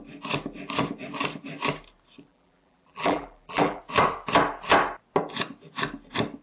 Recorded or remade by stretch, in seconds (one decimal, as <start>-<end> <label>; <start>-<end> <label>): 0.0-2.3 recorded; 2.3-3.8 remade; 3.8-6.4 recorded

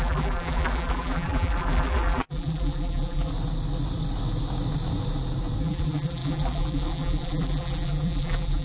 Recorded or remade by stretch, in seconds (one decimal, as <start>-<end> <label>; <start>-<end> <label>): 0.0-3.3 remade; 3.3-5.6 recorded; 5.6-8.6 remade

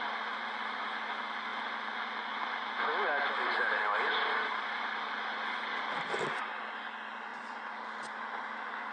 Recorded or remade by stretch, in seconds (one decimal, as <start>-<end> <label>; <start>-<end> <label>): 0.0-8.9 recorded

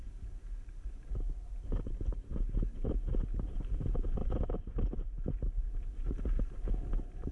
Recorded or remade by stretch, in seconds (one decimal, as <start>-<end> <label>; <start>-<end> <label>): 0.0-7.3 recorded

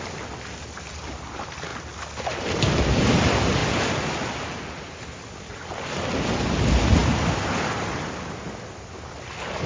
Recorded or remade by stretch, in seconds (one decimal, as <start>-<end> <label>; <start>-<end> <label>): 0.0-3.6 recorded; 3.6-4.1 remade; 4.1-7.0 recorded; 7.0-8.1 remade; 8.1-9.7 recorded

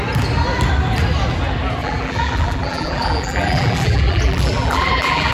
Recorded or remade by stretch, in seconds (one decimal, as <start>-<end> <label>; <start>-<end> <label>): 0.0-1.8 recorded; 1.8-5.3 remade

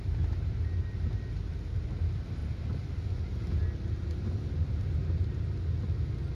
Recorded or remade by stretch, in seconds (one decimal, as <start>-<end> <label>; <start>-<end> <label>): 0.0-6.3 recorded

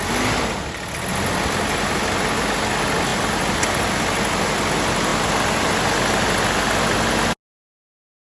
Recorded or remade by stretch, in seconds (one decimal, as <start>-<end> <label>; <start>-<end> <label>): 0.0-8.3 recorded